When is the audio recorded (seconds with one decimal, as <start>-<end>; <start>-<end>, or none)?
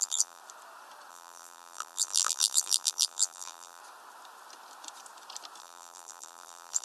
0.4-1.1; 3.8-5.6